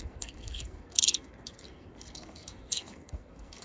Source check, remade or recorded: remade